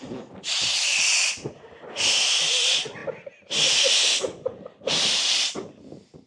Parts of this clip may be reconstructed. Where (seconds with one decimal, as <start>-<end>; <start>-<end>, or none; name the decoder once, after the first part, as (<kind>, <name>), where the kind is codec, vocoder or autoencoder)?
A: none

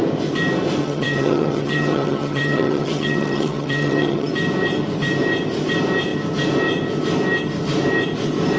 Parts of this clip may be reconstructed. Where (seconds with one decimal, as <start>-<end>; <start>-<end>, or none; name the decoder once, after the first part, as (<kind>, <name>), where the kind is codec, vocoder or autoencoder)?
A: 0.8-4.3 (vocoder, HiFi-GAN)

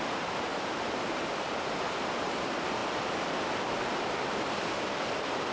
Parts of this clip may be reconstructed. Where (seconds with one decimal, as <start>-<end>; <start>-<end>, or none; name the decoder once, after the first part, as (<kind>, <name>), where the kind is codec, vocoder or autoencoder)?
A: 0.5-1.2 (vocoder, BigVGAN v2)

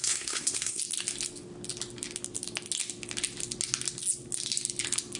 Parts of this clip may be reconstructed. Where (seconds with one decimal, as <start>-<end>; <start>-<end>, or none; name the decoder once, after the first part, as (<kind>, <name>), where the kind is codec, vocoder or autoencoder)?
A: 0.0-0.8 (codec, SNAC)

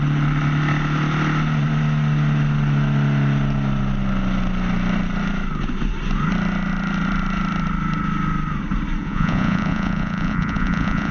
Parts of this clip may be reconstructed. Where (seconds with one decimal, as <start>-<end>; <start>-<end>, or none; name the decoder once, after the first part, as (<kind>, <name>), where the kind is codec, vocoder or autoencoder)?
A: 9.0-11.1 (vocoder, Vocos)

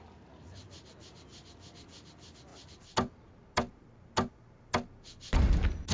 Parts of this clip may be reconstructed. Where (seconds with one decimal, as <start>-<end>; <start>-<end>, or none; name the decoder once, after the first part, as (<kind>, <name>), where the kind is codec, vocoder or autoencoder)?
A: none